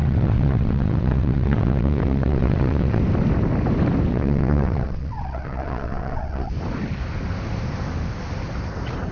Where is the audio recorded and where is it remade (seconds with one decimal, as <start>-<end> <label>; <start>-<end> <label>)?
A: 0.0-3.0 remade; 3.0-4.1 recorded; 4.1-6.5 remade; 6.5-9.1 recorded